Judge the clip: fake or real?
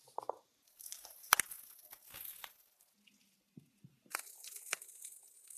real